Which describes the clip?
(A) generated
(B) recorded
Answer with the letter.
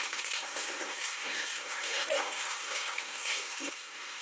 A